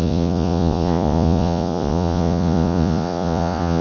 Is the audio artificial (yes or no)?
yes